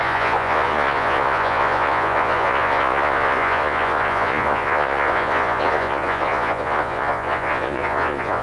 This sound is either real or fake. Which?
fake